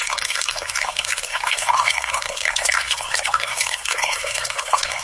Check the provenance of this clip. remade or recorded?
remade